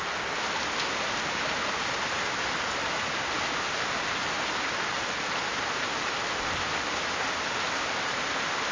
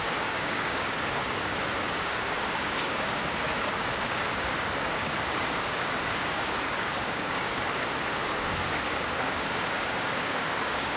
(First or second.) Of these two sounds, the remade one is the second